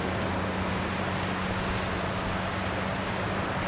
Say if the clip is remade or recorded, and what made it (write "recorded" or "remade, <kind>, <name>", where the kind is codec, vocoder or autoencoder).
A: recorded